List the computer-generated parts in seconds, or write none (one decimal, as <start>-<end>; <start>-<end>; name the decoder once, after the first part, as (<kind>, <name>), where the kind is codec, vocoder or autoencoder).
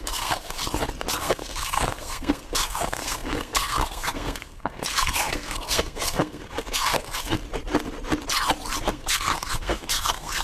0.0-0.6 (codec, SNAC); 1.2-7.4; 8.8-10.4